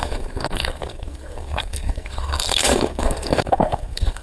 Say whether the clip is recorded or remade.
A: remade